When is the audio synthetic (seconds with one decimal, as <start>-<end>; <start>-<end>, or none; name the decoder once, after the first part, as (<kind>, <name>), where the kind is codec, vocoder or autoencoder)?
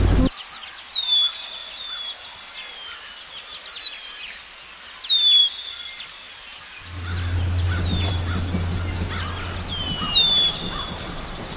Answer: none